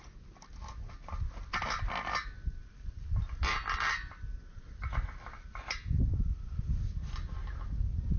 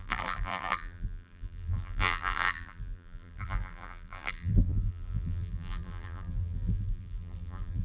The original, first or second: first